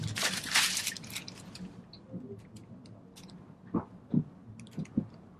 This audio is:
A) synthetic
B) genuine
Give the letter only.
B